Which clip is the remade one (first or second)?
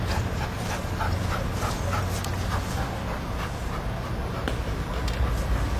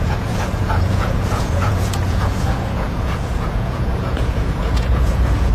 second